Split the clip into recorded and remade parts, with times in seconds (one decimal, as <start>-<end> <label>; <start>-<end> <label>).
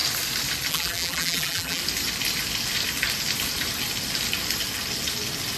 0.0-0.7 recorded; 0.7-1.8 remade; 1.8-5.6 recorded